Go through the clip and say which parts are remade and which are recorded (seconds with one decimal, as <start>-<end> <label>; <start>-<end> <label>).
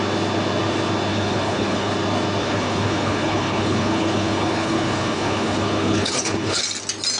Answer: 0.0-1.1 recorded; 1.1-1.9 remade; 1.9-2.4 recorded; 2.4-6.6 remade; 6.6-7.2 recorded